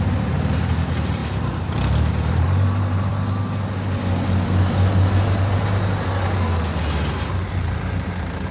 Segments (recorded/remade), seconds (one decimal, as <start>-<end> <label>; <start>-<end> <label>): 0.0-1.2 remade; 1.2-2.3 recorded; 2.3-3.1 remade; 3.1-7.5 recorded; 7.5-8.5 remade